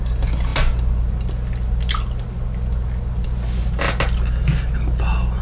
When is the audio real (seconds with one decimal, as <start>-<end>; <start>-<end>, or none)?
0.0-5.4